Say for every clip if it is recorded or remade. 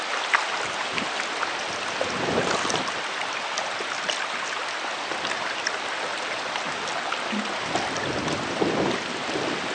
recorded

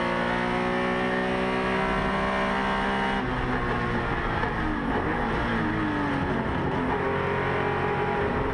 recorded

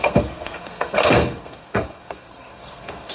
remade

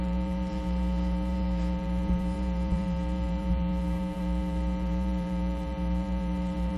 remade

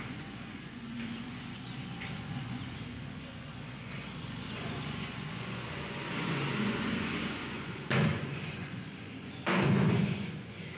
remade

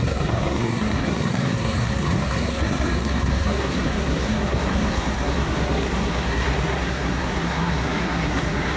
remade